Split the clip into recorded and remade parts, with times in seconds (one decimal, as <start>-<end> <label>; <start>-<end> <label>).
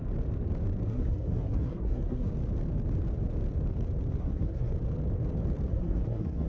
0.0-0.9 recorded; 0.9-2.3 remade; 2.3-4.2 recorded; 4.2-4.7 remade; 4.7-5.7 recorded; 5.7-6.5 remade